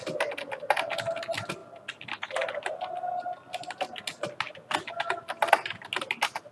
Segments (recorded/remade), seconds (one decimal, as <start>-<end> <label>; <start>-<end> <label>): 0.0-6.5 recorded